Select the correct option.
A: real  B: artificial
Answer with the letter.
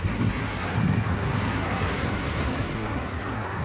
B